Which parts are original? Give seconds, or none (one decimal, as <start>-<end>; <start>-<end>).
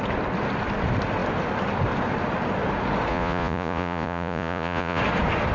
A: 0.0-3.1; 5.0-5.5